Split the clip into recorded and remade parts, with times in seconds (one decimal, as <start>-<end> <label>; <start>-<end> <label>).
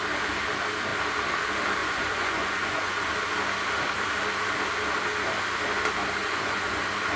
0.0-1.8 recorded; 1.8-3.1 remade; 3.1-6.2 recorded; 6.2-6.8 remade; 6.8-7.2 recorded